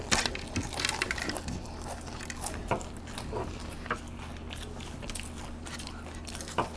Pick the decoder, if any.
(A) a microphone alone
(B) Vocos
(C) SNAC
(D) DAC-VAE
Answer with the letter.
A